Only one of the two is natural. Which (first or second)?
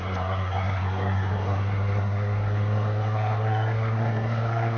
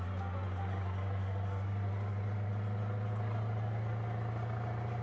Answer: second